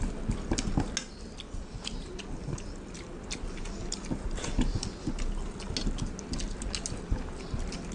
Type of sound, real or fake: real